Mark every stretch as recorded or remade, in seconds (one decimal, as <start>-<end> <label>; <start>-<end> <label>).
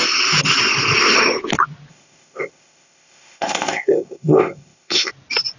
0.0-1.9 recorded; 1.9-5.1 remade; 5.1-5.6 recorded